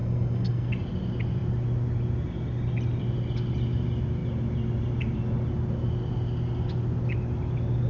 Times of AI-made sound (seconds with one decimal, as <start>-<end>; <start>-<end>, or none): 0.0-0.7